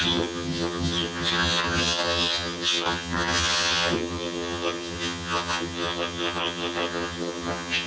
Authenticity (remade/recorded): remade